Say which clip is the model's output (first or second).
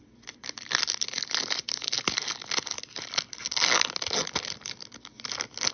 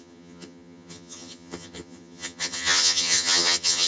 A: second